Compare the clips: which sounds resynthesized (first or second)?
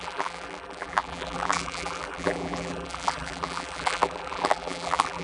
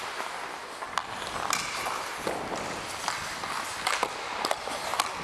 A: first